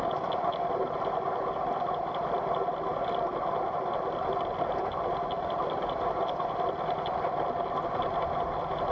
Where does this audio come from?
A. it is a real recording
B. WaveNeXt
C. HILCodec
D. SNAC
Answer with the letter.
A